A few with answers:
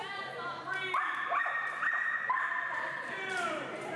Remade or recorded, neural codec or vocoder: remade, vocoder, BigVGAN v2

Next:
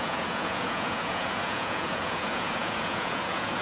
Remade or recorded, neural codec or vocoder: remade, vocoder, Vocos